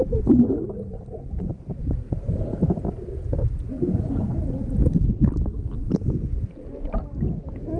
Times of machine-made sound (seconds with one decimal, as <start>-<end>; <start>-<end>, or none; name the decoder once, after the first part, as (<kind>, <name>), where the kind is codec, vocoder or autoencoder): none